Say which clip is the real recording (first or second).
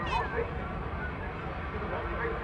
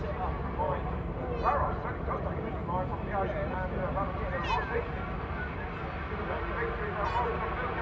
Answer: second